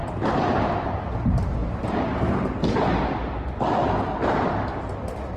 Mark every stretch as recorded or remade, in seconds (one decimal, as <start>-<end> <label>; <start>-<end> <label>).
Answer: 0.0-5.4 recorded